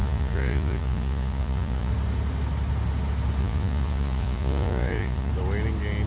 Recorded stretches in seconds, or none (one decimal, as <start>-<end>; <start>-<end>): 1.9-3.4; 5.3-6.1